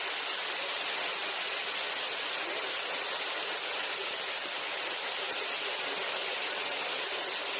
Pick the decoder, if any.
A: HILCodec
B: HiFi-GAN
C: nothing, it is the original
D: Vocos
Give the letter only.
C